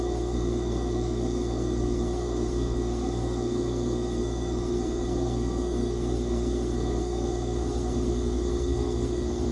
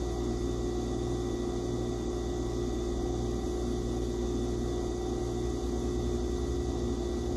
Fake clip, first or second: first